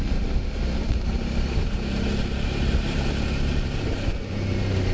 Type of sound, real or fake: fake